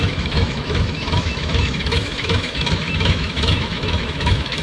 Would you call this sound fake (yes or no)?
yes